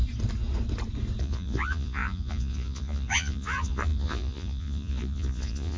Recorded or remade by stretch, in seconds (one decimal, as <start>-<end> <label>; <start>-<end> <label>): 0.0-1.2 recorded; 1.2-5.8 remade